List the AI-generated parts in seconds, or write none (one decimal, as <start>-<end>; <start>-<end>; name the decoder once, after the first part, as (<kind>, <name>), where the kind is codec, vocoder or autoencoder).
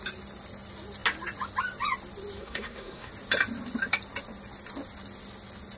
2.4-3.1 (codec, SNAC)